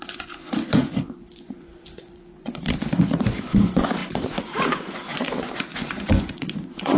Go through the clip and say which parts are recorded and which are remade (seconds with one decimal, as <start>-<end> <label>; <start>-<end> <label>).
0.0-7.0 remade